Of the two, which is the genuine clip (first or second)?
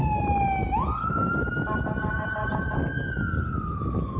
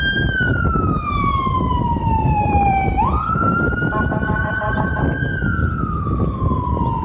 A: first